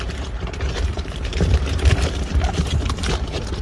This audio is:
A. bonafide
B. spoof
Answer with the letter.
B